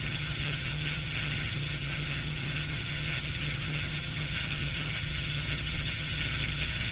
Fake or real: fake